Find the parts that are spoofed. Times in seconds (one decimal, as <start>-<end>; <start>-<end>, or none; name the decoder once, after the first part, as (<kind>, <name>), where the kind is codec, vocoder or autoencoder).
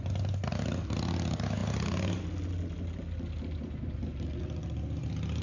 none